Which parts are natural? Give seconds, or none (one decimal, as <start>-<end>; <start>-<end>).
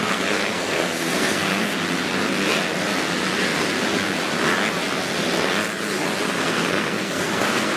1.7-6.4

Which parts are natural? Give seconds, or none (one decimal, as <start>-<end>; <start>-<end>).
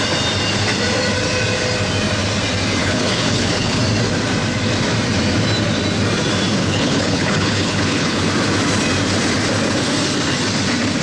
0.0-2.8; 3.8-6.6; 8.2-11.0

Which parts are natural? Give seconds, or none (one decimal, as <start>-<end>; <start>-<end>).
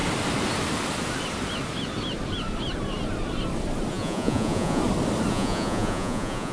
0.0-3.9; 4.8-5.3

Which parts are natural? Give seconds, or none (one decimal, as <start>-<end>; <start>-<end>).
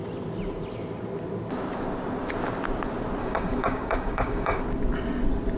0.0-3.2; 4.6-5.6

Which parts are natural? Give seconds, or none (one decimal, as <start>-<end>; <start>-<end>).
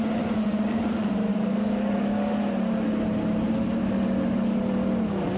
0.0-1.3; 2.3-5.4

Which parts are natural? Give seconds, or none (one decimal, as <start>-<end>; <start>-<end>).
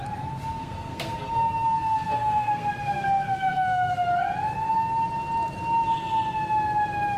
0.0-0.6; 4.1-7.2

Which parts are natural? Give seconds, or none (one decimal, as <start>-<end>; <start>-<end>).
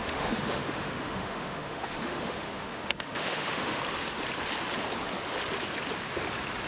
3.8-6.7